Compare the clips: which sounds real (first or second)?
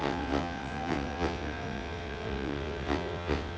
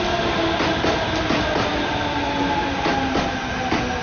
second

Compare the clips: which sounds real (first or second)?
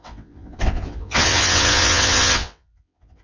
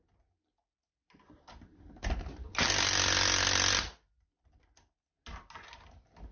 second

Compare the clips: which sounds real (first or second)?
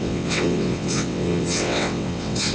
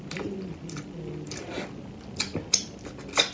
second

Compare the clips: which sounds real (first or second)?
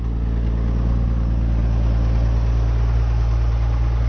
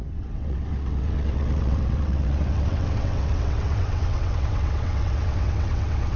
first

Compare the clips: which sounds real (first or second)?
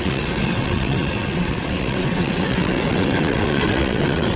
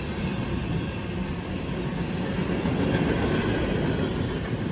second